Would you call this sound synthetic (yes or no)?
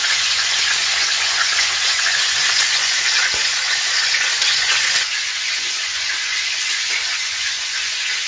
yes